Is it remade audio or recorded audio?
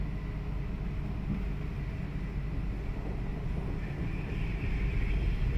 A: recorded